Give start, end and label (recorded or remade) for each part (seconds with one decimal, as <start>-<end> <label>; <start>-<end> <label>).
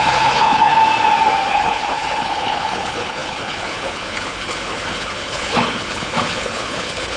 0.0-0.8 remade; 0.8-1.5 recorded; 1.5-7.2 remade